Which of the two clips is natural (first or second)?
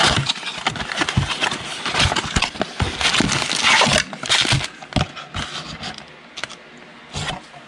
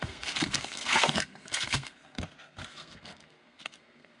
first